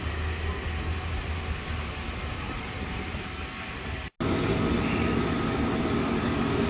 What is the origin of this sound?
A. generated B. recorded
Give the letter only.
B